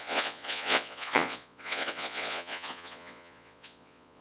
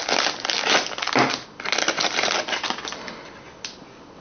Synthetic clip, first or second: first